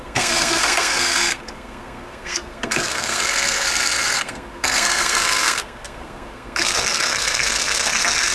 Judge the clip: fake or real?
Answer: fake